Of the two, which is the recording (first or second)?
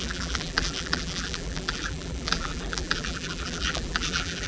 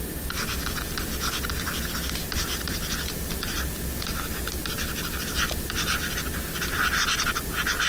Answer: second